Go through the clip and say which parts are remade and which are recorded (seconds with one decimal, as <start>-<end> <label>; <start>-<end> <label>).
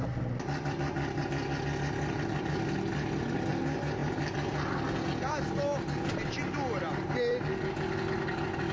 0.0-8.7 recorded